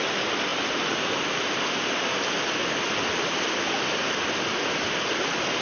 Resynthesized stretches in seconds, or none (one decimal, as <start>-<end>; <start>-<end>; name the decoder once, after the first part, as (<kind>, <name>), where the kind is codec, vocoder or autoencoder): none